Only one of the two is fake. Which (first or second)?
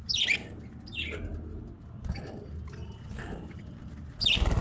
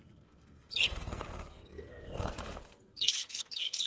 second